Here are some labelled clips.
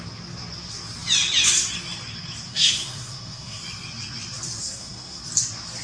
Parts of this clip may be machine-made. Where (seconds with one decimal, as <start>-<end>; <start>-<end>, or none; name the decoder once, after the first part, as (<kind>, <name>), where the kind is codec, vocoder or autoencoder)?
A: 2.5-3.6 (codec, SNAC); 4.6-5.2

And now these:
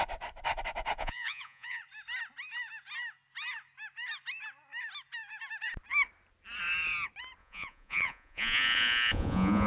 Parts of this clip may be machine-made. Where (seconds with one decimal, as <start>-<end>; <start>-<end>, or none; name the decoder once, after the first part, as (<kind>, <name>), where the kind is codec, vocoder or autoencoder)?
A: 1.0-1.8 (vocoder, Vocos); 7.4-9.7

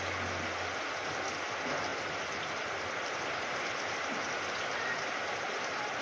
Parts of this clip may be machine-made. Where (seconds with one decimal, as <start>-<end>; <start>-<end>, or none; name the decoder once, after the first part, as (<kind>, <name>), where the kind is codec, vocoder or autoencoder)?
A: none